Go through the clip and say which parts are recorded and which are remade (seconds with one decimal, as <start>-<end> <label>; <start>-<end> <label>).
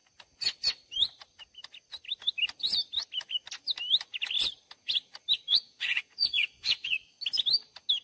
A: 0.0-5.5 recorded; 5.5-7.2 remade; 7.2-8.0 recorded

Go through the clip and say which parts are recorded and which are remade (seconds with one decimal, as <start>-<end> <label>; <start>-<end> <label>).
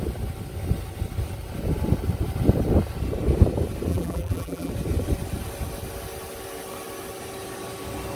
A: 0.0-3.9 recorded; 3.9-4.7 remade; 4.7-8.2 recorded